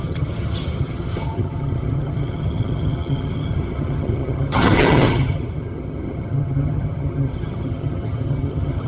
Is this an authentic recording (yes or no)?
no